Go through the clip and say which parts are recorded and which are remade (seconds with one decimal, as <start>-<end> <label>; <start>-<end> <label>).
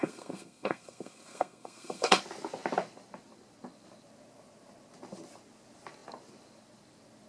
0.0-2.2 remade; 2.2-7.3 recorded